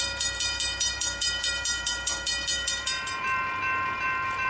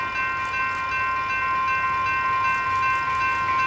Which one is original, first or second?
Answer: second